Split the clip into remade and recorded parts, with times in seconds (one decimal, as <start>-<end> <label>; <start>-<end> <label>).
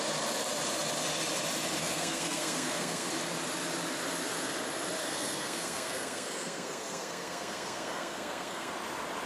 0.0-1.8 recorded; 1.8-3.1 remade; 3.1-5.0 recorded; 5.0-8.7 remade; 8.7-9.3 recorded